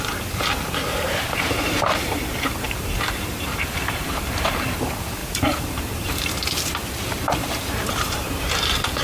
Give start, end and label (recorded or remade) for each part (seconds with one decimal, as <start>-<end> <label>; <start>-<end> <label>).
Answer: 0.0-0.9 recorded; 0.9-4.5 remade; 4.5-5.2 recorded; 5.2-8.5 remade; 8.5-9.0 recorded